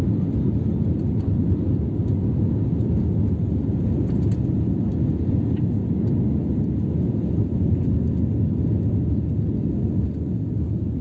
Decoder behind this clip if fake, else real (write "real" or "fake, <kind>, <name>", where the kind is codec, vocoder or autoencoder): real